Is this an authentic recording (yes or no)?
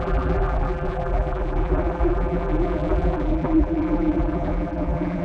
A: no